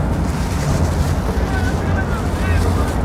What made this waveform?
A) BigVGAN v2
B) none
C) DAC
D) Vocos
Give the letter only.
B